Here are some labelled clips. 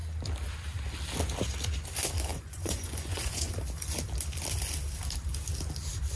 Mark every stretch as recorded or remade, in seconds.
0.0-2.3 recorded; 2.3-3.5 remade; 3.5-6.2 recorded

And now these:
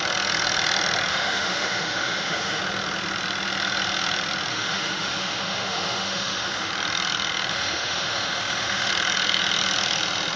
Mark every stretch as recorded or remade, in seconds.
0.0-1.1 recorded; 1.1-2.6 remade; 2.6-4.5 recorded; 4.5-6.7 remade; 6.7-7.5 recorded; 7.5-8.9 remade; 8.9-10.4 recorded